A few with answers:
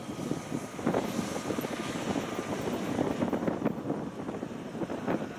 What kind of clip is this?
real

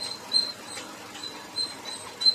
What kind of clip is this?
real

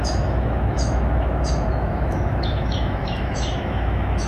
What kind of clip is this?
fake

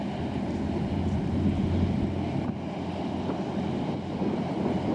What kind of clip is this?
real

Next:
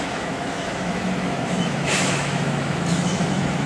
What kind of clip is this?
fake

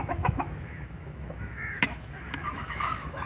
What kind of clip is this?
fake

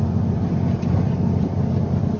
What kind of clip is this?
real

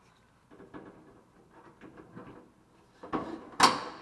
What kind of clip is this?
real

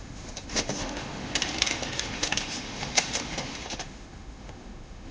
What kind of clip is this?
fake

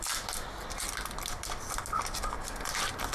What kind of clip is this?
real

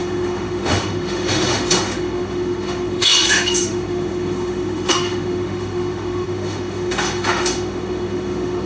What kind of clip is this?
fake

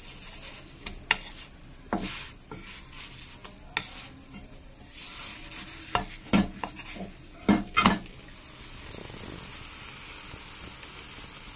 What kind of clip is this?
real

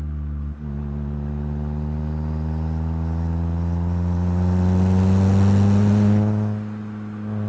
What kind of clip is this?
real